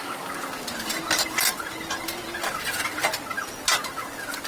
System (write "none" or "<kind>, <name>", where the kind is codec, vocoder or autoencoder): none